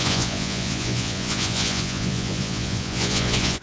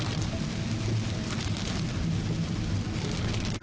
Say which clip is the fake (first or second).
first